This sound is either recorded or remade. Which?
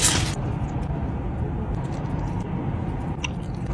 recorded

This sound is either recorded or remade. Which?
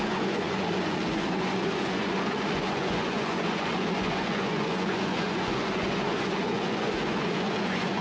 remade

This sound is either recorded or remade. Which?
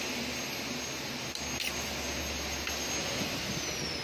recorded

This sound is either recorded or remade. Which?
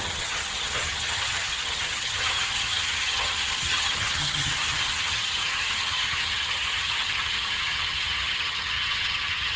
remade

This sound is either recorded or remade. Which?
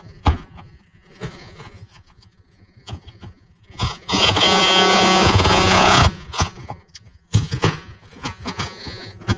remade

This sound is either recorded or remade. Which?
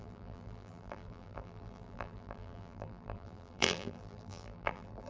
remade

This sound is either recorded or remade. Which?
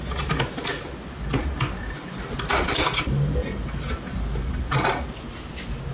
recorded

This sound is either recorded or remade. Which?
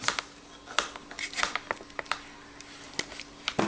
recorded